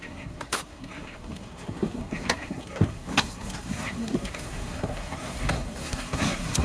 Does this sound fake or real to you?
fake